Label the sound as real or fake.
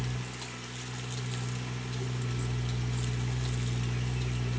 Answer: real